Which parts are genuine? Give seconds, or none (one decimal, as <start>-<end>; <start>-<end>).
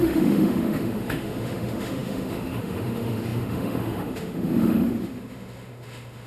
none